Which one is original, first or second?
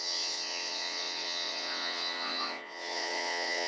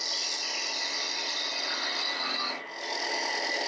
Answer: second